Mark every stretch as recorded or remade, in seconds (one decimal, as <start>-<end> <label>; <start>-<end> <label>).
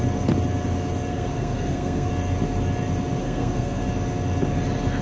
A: 0.0-1.1 recorded; 1.1-2.1 remade; 2.1-3.2 recorded; 3.2-3.8 remade; 3.8-5.0 recorded